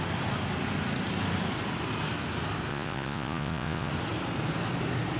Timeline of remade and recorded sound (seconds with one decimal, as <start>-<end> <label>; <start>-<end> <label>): 0.0-2.7 recorded; 2.7-3.9 remade; 3.9-5.2 recorded